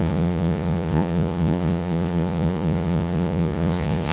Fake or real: fake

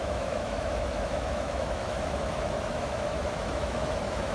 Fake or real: fake